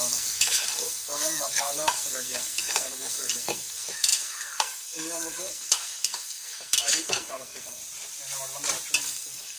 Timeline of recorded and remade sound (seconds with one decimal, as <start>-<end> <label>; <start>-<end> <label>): 0.0-7.8 remade; 7.8-9.0 recorded; 9.0-9.6 remade